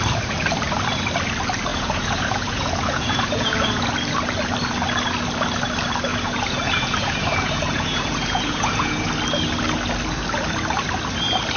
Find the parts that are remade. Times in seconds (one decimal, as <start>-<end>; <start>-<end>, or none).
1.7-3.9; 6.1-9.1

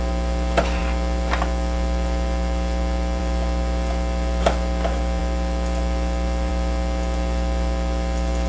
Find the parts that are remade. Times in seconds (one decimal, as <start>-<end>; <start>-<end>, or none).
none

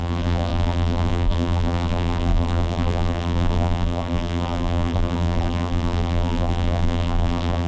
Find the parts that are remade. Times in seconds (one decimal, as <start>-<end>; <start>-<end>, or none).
0.0-7.7